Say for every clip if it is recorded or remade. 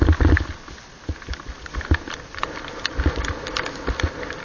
recorded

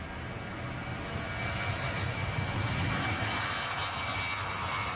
recorded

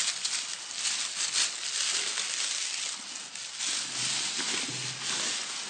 recorded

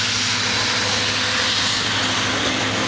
recorded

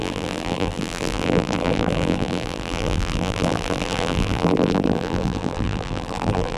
remade